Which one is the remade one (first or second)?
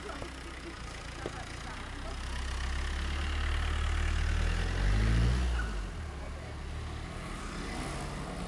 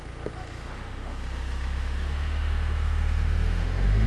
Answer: second